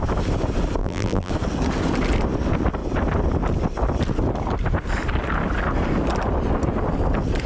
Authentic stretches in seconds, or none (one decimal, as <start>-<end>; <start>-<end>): 0.0-0.8; 1.3-7.5